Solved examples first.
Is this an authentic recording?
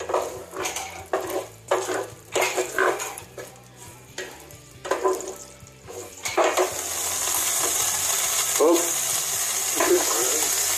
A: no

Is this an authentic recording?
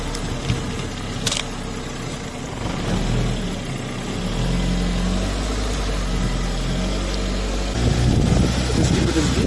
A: yes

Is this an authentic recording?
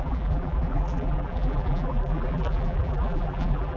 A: no